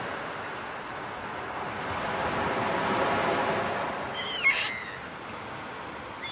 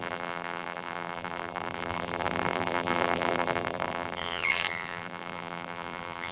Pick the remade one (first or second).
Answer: second